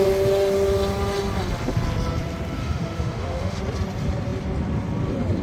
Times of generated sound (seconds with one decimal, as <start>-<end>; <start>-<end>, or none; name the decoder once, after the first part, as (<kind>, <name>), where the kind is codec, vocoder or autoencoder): 2.6-3.6 (autoencoder, DAC-VAE)